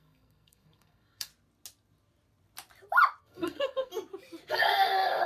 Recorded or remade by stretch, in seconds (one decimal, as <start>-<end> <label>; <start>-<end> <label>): 0.0-1.3 remade; 1.3-3.2 recorded; 3.2-3.9 remade; 3.9-4.5 recorded; 4.5-5.3 remade